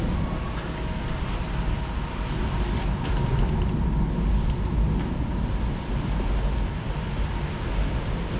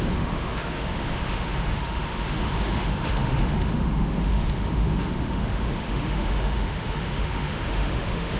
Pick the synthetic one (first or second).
second